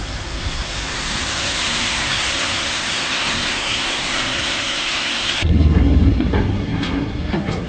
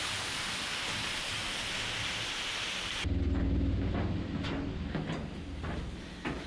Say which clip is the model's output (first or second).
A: first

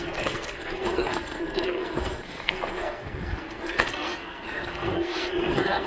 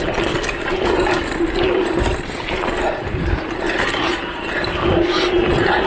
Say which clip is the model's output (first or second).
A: first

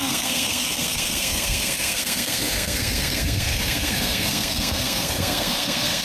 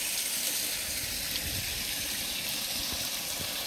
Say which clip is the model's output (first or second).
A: first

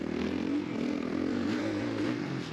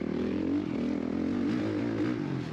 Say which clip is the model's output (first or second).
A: first